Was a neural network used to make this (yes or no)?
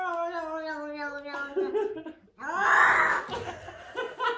no